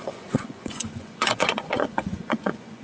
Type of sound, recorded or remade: remade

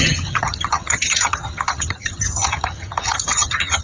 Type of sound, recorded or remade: remade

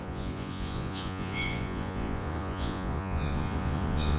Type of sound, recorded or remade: remade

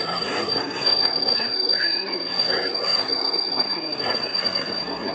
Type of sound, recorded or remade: remade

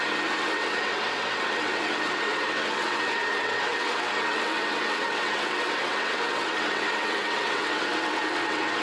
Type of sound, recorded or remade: remade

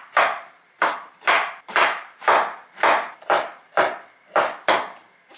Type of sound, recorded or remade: recorded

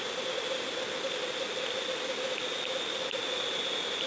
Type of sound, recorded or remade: recorded